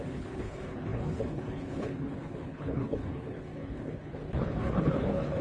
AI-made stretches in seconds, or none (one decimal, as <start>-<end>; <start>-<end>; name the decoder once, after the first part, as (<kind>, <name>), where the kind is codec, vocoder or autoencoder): 0.0-5.4 (codec, HILCodec)